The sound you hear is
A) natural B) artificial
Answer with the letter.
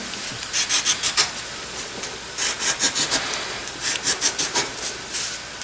A